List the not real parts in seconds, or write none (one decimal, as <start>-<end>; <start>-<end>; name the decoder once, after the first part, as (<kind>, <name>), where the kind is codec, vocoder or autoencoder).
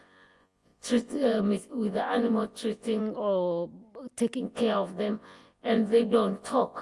0.0-3.0 (vocoder, Vocos); 4.4-6.8